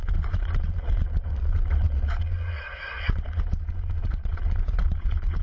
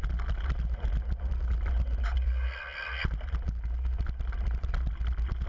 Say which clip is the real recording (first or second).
second